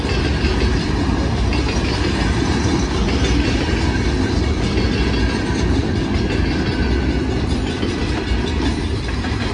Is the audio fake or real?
real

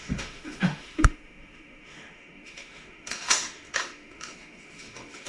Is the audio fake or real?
fake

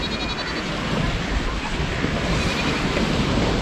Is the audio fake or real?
real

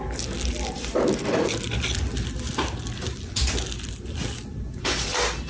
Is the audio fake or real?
real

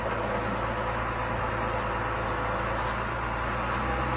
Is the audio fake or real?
real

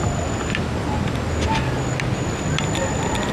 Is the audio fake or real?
real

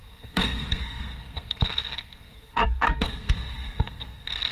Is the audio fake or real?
fake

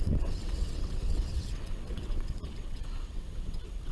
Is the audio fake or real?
fake